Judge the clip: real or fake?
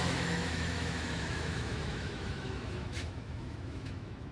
fake